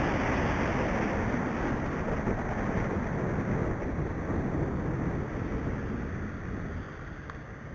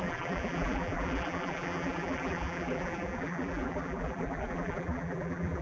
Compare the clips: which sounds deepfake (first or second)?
second